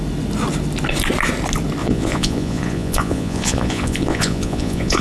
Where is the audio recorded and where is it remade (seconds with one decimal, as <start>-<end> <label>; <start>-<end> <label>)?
0.0-1.8 recorded; 1.8-5.0 remade